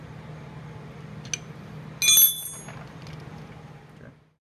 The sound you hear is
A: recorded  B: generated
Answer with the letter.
A